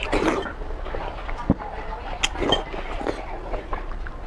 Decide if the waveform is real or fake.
real